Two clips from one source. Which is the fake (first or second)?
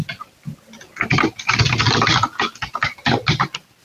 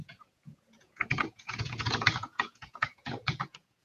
second